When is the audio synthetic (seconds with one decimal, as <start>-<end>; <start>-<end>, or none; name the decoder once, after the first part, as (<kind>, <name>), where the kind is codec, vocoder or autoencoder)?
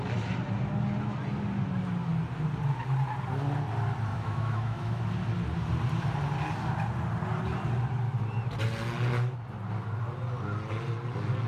4.1-5.0 (autoencoder, DAC-VAE)